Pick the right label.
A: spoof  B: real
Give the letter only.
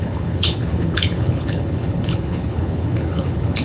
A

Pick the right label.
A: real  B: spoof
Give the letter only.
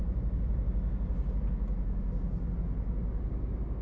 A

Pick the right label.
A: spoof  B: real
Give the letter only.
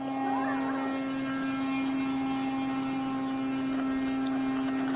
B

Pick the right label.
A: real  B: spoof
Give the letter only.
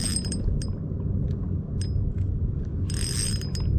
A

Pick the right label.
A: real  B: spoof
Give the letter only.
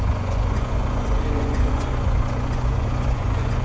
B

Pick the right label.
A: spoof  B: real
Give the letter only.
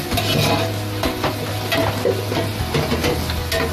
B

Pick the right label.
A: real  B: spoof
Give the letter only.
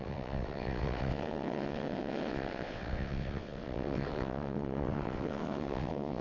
B